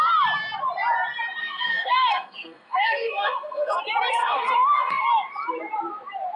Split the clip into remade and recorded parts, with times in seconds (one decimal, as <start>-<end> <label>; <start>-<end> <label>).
0.0-1.4 recorded; 1.4-3.8 remade; 3.8-4.2 recorded; 4.2-5.1 remade; 5.1-6.4 recorded